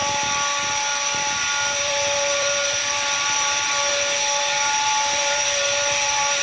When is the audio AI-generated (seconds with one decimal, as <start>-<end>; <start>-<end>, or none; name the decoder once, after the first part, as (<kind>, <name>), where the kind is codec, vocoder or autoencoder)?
1.8-3.9 (vocoder, BigVGAN v2); 4.4-6.4

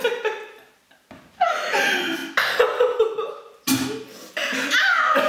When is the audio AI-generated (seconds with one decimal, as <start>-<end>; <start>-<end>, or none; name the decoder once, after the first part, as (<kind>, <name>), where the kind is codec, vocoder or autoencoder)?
none

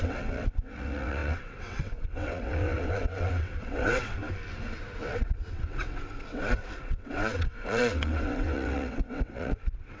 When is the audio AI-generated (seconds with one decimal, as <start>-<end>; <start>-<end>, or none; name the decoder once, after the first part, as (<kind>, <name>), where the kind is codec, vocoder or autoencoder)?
0.0-4.2 (vocoder, WaveNeXt); 4.8-10.0

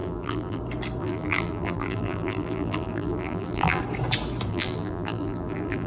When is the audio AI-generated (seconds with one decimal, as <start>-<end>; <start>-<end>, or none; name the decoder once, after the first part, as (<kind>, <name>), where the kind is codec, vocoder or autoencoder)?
0.0-0.6 (vocoder, BigVGAN v2); 1.0-3.8; 4.5-5.9

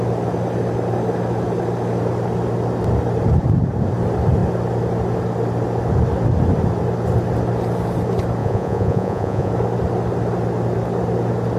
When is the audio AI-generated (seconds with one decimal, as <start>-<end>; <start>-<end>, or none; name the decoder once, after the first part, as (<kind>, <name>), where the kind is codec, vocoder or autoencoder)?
8.4-9.5 (vocoder, Vocos)